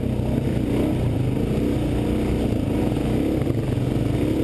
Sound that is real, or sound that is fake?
real